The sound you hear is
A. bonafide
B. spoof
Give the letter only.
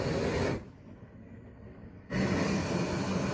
A